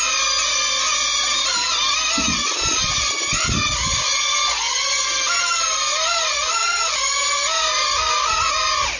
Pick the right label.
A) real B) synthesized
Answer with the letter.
A